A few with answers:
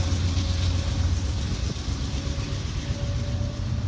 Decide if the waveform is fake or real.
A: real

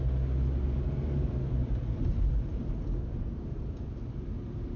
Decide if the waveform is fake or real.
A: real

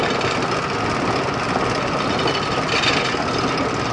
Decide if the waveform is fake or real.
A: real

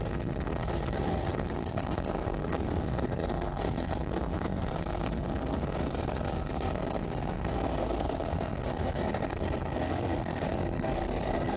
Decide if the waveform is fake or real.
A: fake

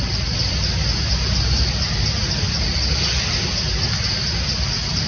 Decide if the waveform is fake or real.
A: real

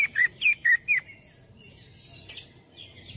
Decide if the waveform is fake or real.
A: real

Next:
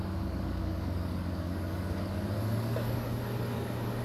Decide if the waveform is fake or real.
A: fake